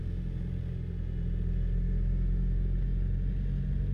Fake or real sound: real